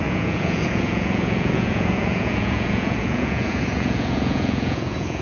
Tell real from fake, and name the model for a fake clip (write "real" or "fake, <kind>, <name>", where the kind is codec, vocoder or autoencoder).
fake, vocoder, Vocos